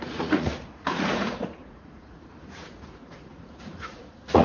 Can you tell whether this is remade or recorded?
remade